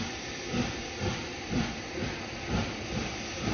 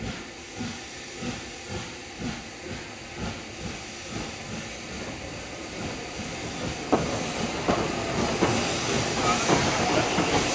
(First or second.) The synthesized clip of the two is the first